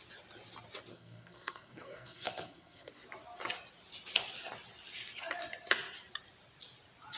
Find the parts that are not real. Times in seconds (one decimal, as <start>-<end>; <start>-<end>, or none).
0.9-2.9

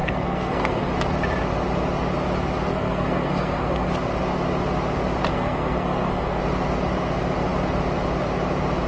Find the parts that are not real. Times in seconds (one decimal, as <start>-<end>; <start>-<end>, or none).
0.0-0.9; 2.7-3.9; 5.3-6.4

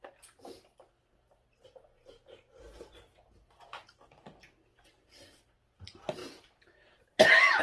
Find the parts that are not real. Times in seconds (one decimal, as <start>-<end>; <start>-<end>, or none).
none

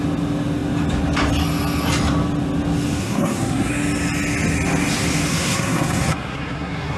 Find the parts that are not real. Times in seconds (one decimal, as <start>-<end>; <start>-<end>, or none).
3.0-3.7; 5.3-7.0